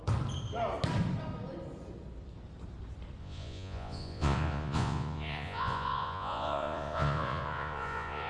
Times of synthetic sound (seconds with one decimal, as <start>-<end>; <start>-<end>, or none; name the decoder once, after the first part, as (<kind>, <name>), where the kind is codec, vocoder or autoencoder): 3.2-8.3 (vocoder, Vocos)